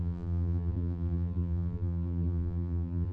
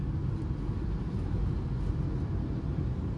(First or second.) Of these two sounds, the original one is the second